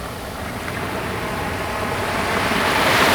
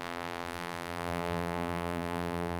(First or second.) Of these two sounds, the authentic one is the first